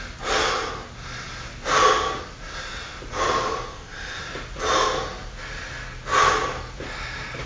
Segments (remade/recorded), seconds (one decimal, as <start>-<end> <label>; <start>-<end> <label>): 0.0-3.7 recorded; 3.7-4.2 remade; 4.2-7.5 recorded